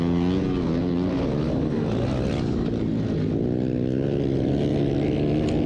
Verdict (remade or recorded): recorded